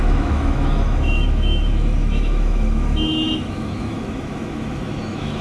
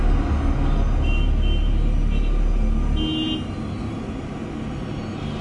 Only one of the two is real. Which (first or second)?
second